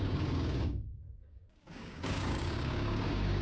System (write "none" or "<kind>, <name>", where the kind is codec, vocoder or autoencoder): codec, DAC